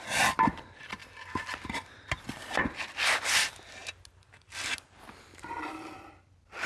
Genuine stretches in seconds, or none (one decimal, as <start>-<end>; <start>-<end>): 3.8-5.0